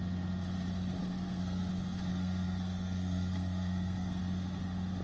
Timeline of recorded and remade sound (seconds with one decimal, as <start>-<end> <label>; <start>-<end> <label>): 0.0-1.0 recorded; 1.0-1.7 remade; 1.7-2.1 recorded; 2.1-4.2 remade; 4.2-5.0 recorded